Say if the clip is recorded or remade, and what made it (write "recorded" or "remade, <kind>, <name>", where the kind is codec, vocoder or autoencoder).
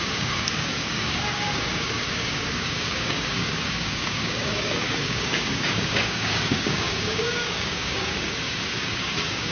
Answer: remade, codec, DAC